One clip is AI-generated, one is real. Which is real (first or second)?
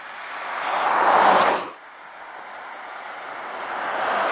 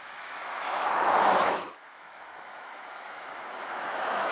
first